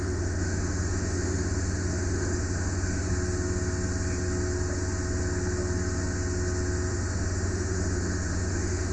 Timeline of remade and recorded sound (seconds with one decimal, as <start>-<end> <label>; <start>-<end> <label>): 0.0-3.1 remade; 3.1-6.9 recorded; 6.9-8.9 remade